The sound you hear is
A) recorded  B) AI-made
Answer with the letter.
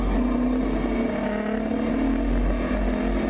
A